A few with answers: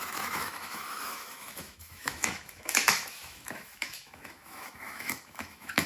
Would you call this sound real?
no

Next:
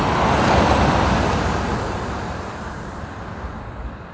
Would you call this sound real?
yes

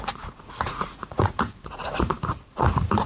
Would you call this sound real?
no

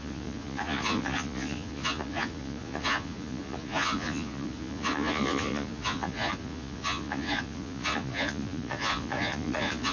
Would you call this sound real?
no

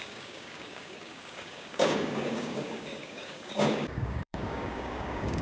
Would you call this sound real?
no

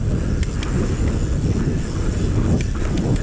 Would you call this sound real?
yes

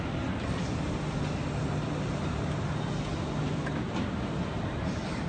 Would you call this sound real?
yes